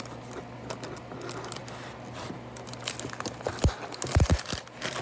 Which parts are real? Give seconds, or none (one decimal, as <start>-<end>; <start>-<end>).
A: 0.0-5.0